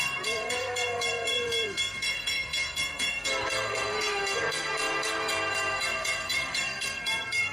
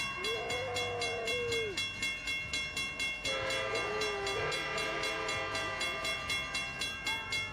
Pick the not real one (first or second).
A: first